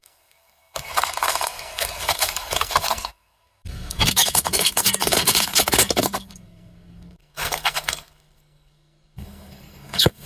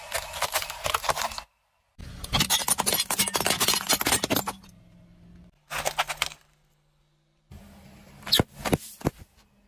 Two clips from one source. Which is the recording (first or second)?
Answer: second